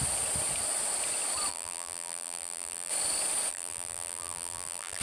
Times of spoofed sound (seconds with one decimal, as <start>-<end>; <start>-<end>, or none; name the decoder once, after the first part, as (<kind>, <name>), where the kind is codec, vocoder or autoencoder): 1.5-2.9 (vocoder, BigVGAN v2); 3.5-5.0